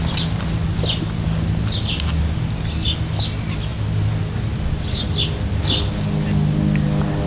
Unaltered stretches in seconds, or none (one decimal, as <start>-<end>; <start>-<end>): 0.0-7.3